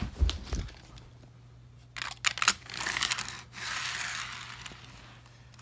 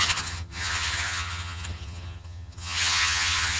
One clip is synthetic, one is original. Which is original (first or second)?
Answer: first